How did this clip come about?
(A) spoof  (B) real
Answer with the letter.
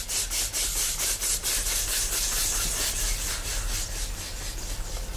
B